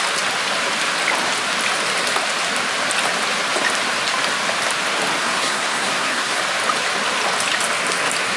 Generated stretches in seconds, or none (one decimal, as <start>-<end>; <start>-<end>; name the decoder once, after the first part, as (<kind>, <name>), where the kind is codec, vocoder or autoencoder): 5.2-6.4 (codec, SNAC)